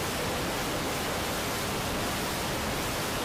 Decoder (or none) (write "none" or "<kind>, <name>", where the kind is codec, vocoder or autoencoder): none